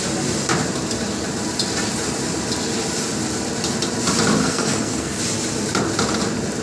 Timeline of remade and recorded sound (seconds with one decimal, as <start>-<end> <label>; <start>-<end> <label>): 0.0-4.4 recorded; 4.4-5.2 remade; 5.2-6.6 recorded